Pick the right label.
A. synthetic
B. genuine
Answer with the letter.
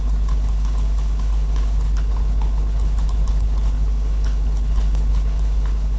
A